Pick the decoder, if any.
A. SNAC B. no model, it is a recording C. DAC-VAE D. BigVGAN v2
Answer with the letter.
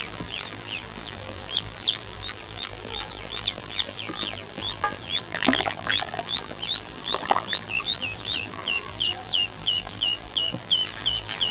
D